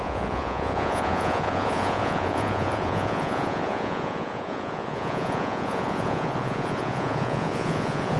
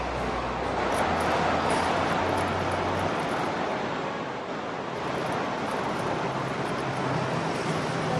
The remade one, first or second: first